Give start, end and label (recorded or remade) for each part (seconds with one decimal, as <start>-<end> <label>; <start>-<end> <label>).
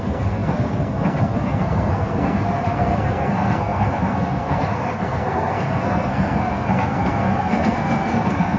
0.0-8.6 remade